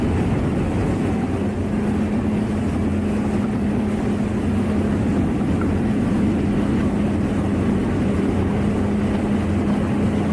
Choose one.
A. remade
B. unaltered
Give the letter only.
B